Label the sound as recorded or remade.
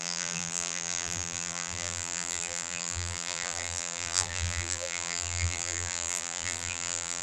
remade